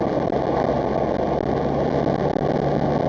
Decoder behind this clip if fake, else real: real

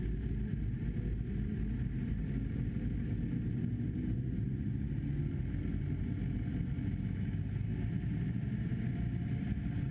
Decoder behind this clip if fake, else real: real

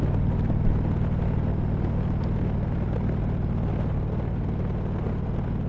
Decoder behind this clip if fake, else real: real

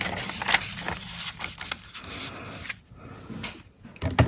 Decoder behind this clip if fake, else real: real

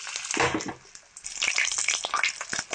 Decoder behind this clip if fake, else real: real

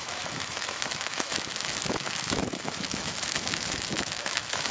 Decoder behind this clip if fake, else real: fake, autoencoder, DAC-VAE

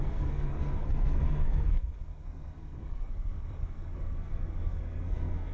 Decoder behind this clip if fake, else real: fake, codec, SNAC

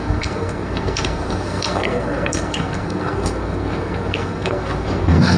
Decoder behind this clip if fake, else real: fake, codec, SNAC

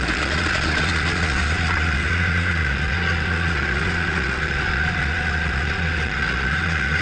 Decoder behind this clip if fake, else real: fake, vocoder, Vocos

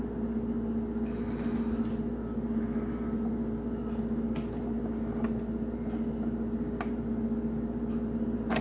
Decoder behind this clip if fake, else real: real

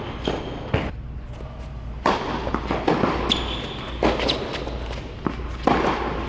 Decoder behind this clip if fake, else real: real